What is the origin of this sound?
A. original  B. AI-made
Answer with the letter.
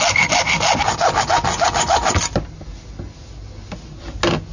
A